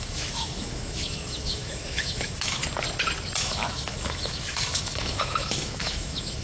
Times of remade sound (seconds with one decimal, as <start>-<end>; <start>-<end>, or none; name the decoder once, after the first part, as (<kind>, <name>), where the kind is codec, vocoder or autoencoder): 0.0-2.6 (autoencoder, DAC-VAE); 3.4-6.4